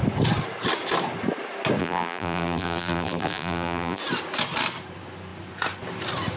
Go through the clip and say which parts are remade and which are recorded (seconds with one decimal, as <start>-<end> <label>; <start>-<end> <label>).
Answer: 0.0-1.8 recorded; 1.8-4.0 remade; 4.0-6.4 recorded

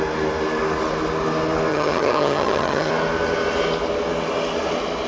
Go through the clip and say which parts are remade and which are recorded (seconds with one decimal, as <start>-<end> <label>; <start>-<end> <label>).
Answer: 0.0-1.7 recorded; 1.7-2.9 remade; 2.9-5.1 recorded

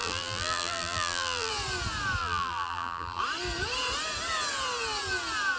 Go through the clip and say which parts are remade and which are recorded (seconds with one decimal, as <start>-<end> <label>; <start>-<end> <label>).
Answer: 0.0-1.5 remade; 1.5-2.2 recorded; 2.2-3.2 remade; 3.2-5.6 recorded

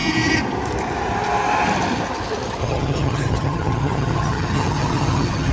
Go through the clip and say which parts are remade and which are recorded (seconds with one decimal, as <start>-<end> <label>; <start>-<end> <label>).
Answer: 0.0-2.6 recorded; 2.6-5.5 remade

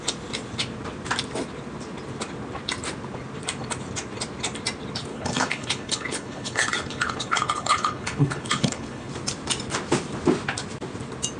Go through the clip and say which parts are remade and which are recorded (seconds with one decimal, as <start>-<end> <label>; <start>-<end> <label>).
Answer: 0.0-5.1 recorded; 5.1-9.1 remade; 9.1-11.4 recorded